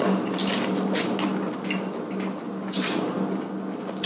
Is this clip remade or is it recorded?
recorded